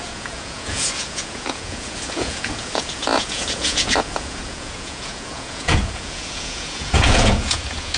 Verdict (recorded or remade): remade